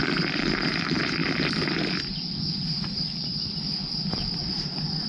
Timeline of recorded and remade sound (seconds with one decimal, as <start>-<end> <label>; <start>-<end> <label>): 0.0-3.8 recorded; 3.8-4.5 remade; 4.5-5.1 recorded